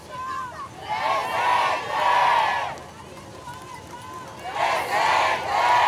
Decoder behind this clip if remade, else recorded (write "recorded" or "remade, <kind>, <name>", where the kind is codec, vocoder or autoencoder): recorded